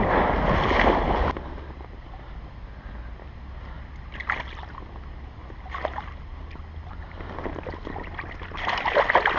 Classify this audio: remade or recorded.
recorded